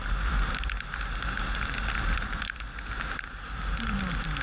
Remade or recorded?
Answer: recorded